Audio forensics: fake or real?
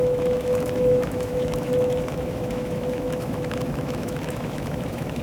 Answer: fake